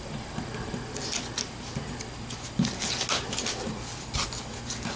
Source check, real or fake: real